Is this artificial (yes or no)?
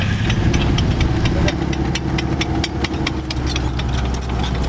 no